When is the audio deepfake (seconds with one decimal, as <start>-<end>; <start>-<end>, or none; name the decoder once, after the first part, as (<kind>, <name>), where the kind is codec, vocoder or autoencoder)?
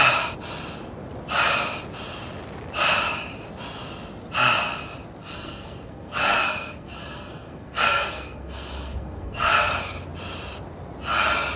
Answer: 5.2-9.7 (codec, SNAC)